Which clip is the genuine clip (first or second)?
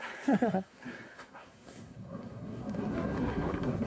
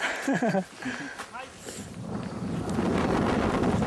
second